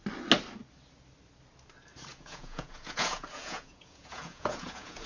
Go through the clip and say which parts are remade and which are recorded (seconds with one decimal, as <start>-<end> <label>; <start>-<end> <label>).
0.0-2.1 recorded; 2.1-5.1 remade